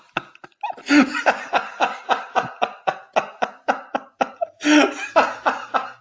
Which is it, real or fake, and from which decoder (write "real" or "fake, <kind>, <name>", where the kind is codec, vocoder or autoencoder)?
real